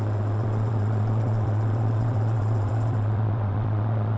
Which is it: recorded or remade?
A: remade